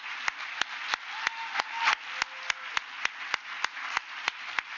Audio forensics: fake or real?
real